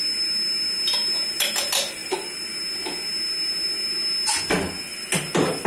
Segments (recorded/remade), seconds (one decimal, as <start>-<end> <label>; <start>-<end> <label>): 0.0-5.7 recorded